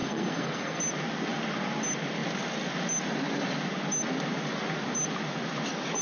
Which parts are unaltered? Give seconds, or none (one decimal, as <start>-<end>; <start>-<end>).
0.8-6.0